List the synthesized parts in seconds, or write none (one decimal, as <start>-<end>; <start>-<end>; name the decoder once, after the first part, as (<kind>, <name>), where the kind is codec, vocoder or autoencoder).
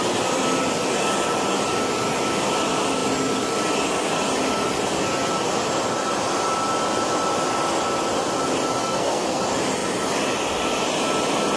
8.8-9.4 (codec, SNAC)